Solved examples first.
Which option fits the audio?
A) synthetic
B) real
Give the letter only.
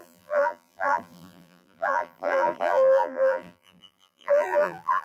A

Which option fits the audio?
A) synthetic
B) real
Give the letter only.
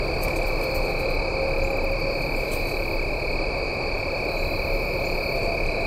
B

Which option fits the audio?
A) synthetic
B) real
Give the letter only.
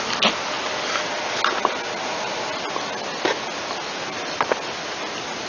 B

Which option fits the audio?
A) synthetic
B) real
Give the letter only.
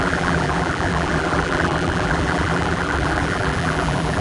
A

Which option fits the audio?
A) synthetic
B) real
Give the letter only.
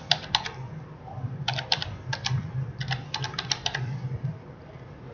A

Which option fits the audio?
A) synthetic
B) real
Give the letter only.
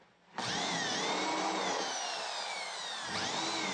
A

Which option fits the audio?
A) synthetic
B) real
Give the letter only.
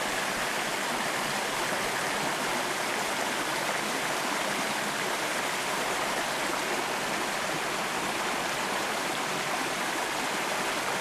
B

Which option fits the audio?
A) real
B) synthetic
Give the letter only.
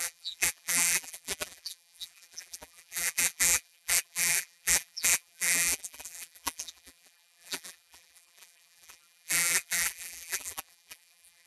B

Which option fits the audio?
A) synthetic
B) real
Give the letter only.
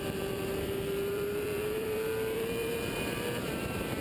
A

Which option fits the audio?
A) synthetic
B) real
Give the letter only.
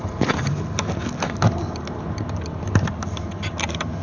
B